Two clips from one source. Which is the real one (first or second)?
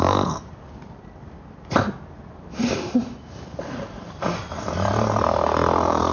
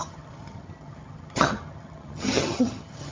first